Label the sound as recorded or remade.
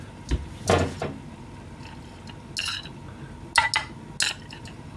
recorded